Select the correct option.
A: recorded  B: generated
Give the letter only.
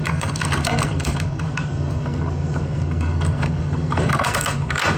B